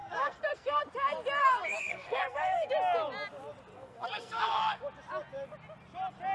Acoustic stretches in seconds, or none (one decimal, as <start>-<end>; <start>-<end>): 0.8-1.4; 2.7-3.7; 4.8-6.3